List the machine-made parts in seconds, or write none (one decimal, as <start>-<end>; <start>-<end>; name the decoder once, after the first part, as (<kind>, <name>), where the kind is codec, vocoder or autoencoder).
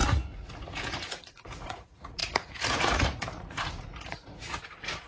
0.0-5.1 (vocoder, Vocos)